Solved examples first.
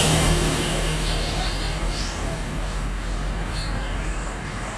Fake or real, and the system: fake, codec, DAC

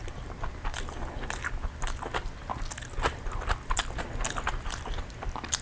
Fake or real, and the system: real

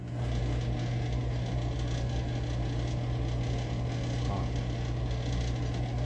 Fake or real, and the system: real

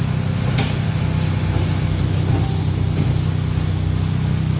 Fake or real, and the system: real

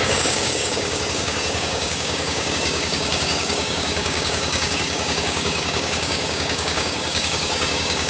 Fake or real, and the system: fake, codec, DAC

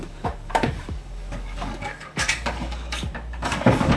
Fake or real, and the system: fake, codec, DAC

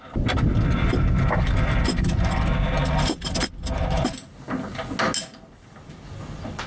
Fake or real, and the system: real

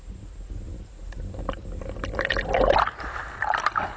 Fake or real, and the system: real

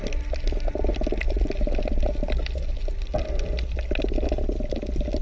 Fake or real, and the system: real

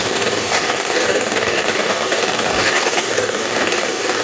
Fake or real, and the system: fake, codec, DAC